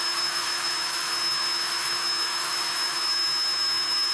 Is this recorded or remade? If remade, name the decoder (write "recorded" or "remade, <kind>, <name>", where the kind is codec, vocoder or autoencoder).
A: remade, autoencoder, DAC-VAE